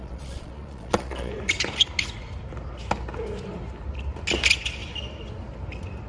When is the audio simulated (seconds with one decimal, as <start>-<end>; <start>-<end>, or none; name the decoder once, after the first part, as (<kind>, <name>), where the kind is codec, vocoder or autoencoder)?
0.0-1.3 (vocoder, Vocos)